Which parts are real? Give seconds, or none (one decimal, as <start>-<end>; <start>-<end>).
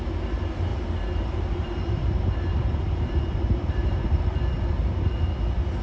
0.0-0.7; 4.2-5.8